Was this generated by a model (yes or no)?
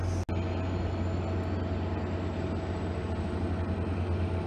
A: no